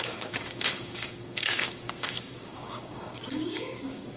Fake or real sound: fake